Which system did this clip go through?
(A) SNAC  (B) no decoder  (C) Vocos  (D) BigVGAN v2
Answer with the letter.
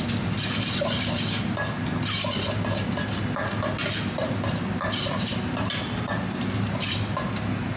B